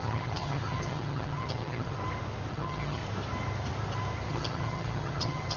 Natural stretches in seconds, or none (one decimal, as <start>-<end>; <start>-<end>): 2.0-2.5; 3.0-4.3